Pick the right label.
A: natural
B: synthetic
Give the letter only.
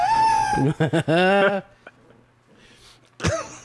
A